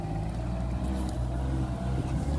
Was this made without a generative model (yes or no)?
yes